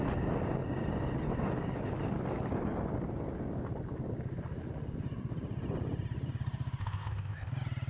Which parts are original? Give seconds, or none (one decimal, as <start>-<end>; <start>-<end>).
0.0-6.8; 7.5-7.9